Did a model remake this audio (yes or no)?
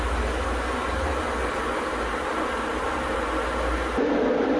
no